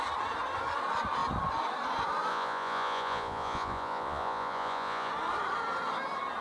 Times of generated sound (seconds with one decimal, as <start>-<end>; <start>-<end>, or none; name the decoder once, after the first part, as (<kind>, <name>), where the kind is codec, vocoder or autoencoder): 2.3-5.1 (vocoder, Vocos)